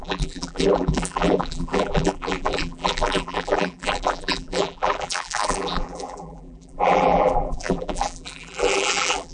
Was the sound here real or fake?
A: fake